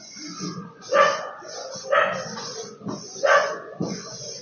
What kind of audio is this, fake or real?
fake